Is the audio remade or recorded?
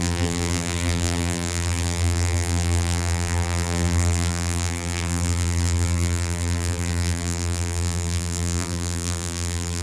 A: remade